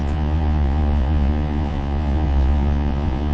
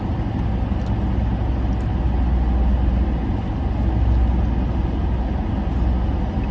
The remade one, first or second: first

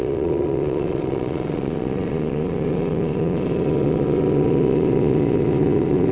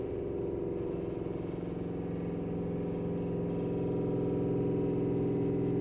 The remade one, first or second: first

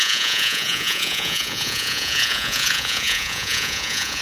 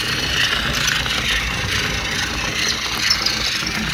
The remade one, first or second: first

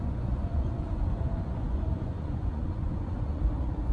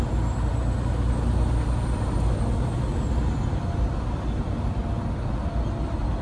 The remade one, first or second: first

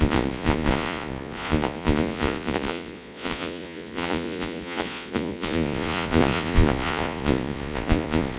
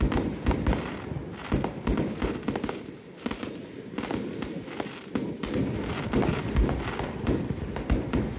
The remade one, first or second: first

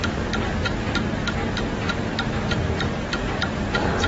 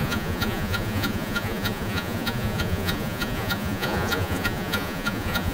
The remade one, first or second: second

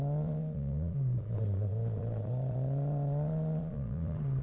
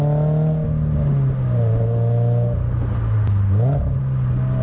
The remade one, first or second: first